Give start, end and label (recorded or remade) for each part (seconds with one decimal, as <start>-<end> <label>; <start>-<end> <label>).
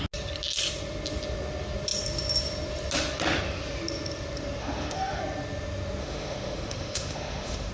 0.0-4.6 recorded; 4.6-5.2 remade; 5.2-6.0 recorded; 6.0-7.7 remade